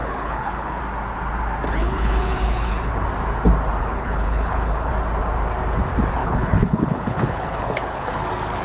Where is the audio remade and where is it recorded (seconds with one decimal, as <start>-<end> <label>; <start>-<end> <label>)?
0.0-0.8 remade; 0.8-1.8 recorded; 1.8-2.9 remade; 2.9-3.8 recorded; 3.8-4.9 remade; 4.9-6.2 recorded; 6.2-8.1 remade; 8.1-8.6 recorded